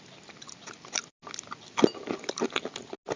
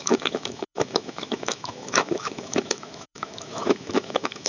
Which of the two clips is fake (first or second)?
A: second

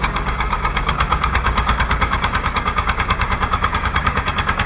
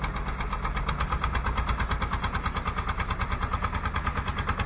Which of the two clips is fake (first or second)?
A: first